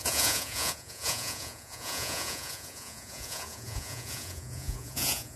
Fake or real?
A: fake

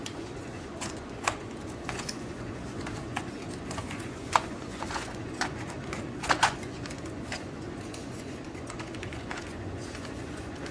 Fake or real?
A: fake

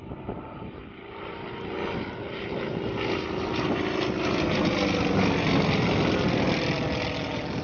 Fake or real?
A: real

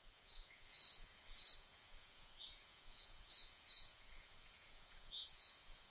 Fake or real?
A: fake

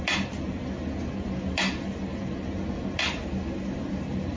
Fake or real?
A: real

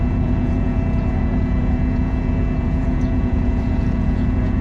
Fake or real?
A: fake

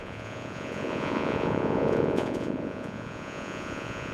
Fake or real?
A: fake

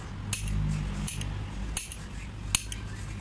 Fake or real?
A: real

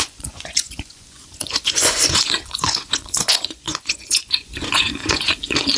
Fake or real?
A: fake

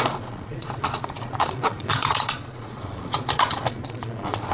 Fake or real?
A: fake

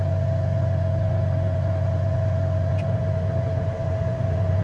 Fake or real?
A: fake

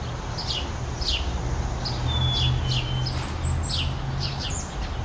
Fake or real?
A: real